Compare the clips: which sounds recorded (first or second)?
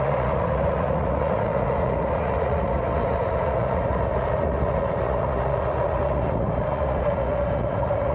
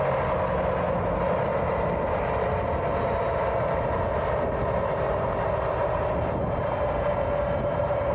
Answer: second